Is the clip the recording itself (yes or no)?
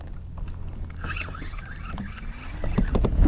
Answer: yes